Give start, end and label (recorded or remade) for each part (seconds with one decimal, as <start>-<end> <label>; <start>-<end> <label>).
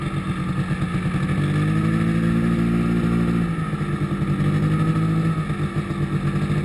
0.0-6.6 recorded